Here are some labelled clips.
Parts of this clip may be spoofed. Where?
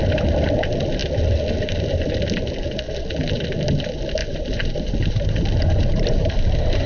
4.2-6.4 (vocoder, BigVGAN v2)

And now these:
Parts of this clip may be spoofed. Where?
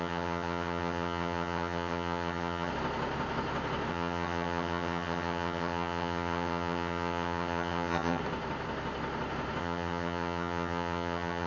0.0-2.7 (vocoder, HiFi-GAN); 3.9-8.2; 9.6-11.5